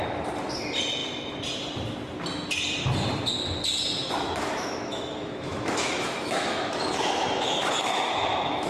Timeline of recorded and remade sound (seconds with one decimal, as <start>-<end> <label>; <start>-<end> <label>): 0.0-4.0 recorded; 4.0-8.7 remade